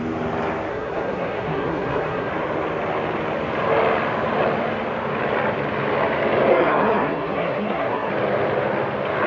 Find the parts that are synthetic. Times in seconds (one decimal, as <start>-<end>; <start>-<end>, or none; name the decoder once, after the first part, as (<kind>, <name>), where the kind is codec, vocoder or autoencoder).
0.7-2.3 (codec, SNAC); 6.5-8.1